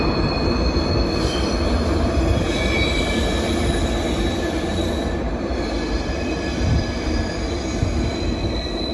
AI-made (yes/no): no